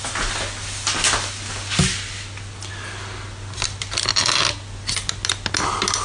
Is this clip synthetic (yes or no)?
no